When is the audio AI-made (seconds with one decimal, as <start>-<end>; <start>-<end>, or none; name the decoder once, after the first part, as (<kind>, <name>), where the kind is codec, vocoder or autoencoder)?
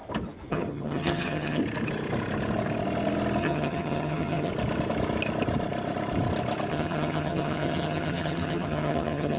0.5-1.6 (vocoder, HiFi-GAN); 3.4-4.5; 6.7-9.4